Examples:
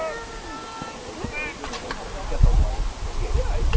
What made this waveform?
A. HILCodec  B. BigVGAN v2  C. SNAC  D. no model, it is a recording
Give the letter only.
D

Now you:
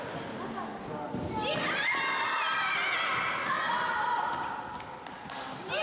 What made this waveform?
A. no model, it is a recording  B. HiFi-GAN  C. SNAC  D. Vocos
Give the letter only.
A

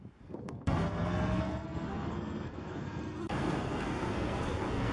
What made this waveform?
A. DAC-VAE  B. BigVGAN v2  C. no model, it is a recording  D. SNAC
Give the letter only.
D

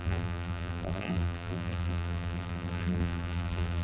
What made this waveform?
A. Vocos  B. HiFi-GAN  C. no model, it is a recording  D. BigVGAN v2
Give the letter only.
D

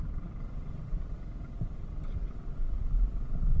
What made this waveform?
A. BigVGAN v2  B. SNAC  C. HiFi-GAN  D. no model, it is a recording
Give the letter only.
D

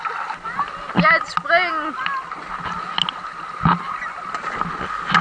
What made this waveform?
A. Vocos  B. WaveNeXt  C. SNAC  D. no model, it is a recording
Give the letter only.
D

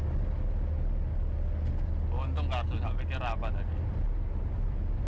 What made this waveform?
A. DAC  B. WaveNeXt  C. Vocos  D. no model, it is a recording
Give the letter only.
D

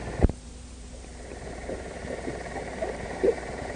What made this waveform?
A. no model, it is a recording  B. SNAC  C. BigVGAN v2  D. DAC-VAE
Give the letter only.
C